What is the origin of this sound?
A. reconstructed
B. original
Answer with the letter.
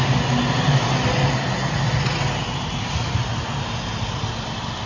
B